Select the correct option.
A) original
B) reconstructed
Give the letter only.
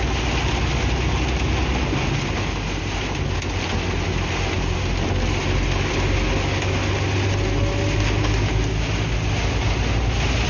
A